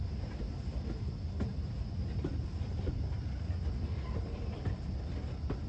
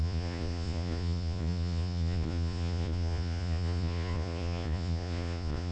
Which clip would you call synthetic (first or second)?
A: second